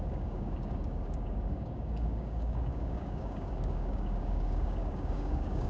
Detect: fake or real fake